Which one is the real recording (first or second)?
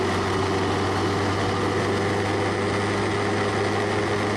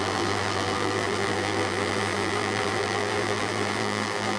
first